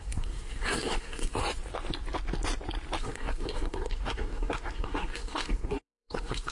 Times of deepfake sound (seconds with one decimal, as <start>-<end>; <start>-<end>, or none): 0.0-1.4; 3.0-6.5